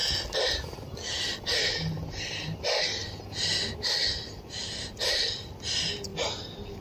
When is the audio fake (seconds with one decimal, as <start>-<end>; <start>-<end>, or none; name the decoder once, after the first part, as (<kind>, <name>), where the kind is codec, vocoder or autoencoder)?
none